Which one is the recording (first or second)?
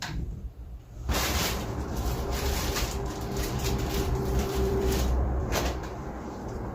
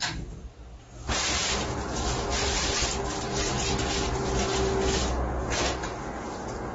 second